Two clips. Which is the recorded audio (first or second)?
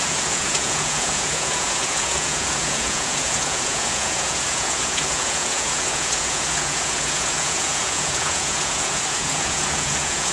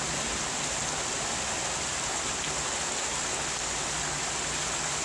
second